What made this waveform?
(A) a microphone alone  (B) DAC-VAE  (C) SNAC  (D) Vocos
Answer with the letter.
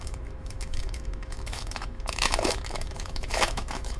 B